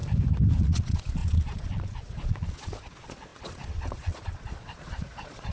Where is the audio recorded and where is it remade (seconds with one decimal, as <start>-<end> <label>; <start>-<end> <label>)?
0.0-0.6 recorded; 0.6-5.5 remade